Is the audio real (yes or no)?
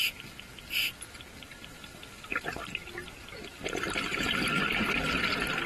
yes